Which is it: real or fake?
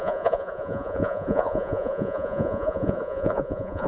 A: fake